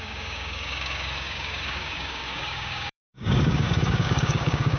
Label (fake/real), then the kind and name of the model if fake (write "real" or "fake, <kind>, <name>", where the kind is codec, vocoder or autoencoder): fake, codec, DAC